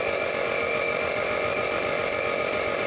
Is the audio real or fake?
fake